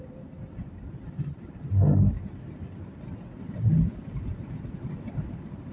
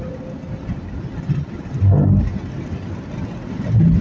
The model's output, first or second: first